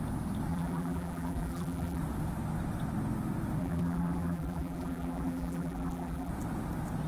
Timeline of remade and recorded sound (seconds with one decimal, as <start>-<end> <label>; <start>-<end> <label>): 0.0-0.5 recorded; 0.5-2.0 remade; 2.0-3.6 recorded; 3.6-6.3 remade; 6.3-7.1 recorded